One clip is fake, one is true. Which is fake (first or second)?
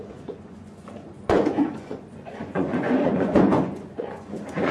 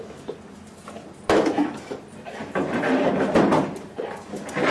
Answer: first